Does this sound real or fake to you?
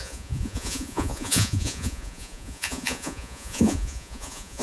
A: fake